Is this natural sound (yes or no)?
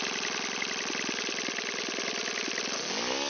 yes